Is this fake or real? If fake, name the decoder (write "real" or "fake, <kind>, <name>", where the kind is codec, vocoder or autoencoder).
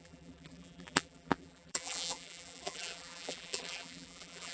fake, vocoder, BigVGAN v2